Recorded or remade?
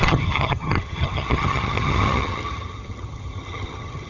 remade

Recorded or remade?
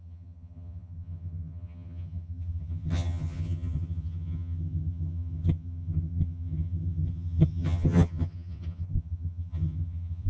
remade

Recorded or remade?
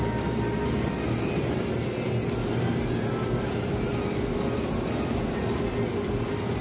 recorded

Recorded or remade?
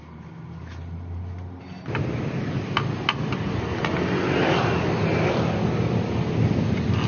recorded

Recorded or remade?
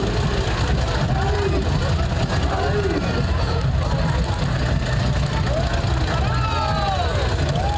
recorded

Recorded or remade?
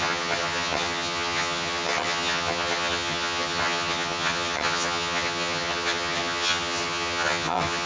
remade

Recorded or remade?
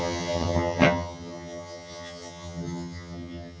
remade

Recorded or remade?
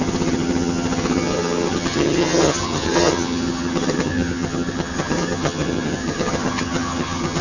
remade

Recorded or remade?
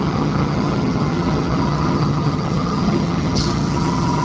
remade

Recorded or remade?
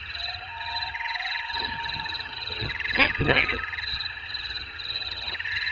remade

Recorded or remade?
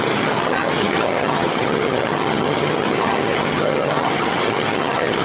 remade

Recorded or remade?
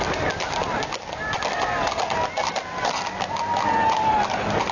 recorded